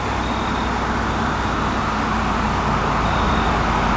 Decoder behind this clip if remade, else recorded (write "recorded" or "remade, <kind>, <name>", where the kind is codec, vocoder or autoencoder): recorded